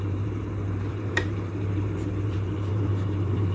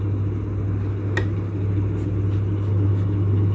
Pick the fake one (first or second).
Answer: first